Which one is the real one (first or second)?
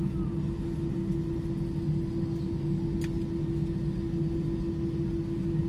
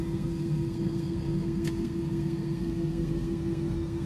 first